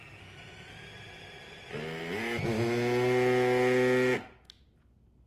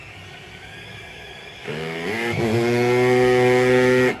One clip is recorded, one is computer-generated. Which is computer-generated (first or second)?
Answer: second